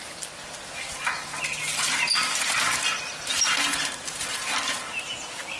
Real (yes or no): yes